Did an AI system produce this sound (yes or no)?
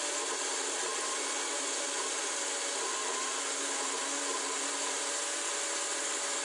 no